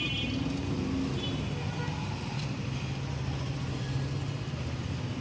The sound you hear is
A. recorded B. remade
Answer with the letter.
A